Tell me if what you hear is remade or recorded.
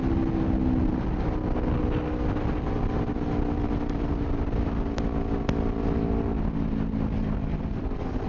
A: recorded